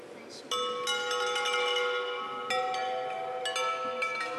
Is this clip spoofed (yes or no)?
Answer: no